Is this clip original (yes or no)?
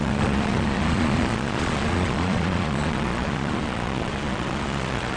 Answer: no